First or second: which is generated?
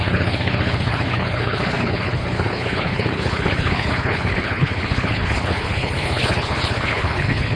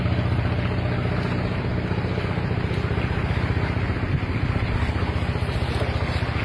first